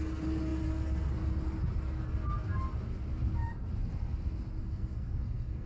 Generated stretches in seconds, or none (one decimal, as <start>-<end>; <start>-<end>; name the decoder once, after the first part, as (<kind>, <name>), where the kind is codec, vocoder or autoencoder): 4.6-5.7 (codec, SNAC)